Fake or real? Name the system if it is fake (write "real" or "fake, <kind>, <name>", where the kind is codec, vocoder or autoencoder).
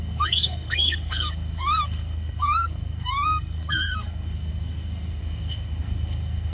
fake, codec, SNAC